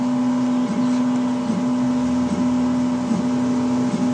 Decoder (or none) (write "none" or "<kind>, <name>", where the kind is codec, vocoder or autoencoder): none